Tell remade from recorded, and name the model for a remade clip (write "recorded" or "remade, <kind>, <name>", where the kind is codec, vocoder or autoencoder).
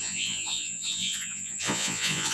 remade, vocoder, Vocos